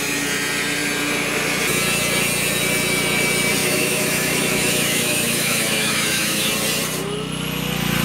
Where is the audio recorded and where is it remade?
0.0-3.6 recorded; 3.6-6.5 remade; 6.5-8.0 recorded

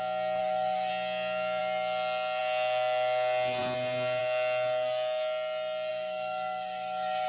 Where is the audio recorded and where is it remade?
0.0-0.4 recorded; 0.4-0.9 remade; 0.9-5.9 recorded; 5.9-7.3 remade

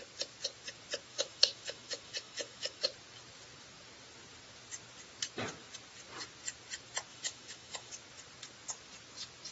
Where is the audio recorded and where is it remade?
0.0-1.1 recorded; 1.1-2.8 remade; 2.8-7.1 recorded; 7.1-7.9 remade; 7.9-9.5 recorded

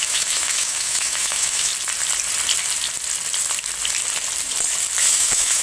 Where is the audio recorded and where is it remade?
0.0-1.7 remade; 1.7-5.1 recorded; 5.1-5.6 remade